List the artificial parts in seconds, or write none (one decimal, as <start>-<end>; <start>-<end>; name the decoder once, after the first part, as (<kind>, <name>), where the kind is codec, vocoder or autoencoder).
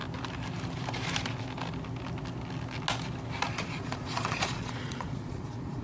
3.5-5.8 (vocoder, Vocos)